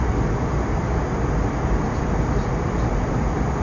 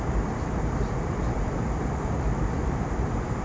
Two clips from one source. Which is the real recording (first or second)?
first